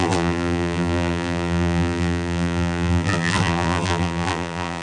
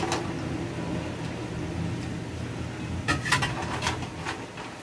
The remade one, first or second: first